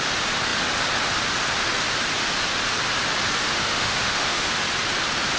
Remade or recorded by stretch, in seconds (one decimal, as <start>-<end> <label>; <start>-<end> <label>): 0.0-3.4 recorded; 3.4-4.5 remade; 4.5-5.4 recorded